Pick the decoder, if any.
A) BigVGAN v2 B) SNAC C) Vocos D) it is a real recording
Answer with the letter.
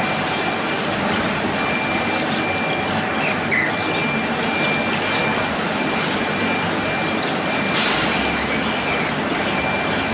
D